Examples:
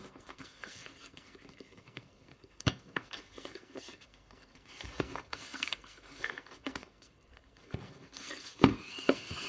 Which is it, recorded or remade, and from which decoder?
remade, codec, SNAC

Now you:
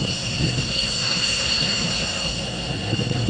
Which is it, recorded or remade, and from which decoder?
remade, codec, SNAC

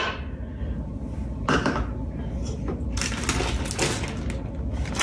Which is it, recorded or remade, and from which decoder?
recorded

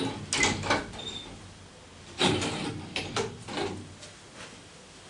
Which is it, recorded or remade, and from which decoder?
recorded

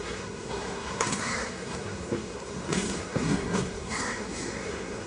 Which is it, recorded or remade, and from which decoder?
remade, codec, SNAC